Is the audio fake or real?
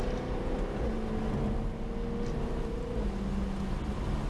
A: real